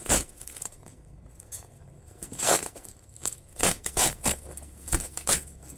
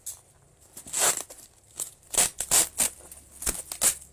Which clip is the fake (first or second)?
first